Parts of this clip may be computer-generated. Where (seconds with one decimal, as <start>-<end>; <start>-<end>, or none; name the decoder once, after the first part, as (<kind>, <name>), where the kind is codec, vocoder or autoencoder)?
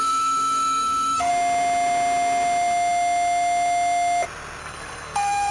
0.0-1.3 (codec, SNAC); 4.6-5.5